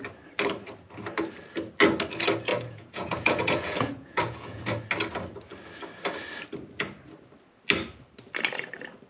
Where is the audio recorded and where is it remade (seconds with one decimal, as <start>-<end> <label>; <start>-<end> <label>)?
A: 0.0-2.5 recorded; 2.5-4.6 remade; 4.6-9.1 recorded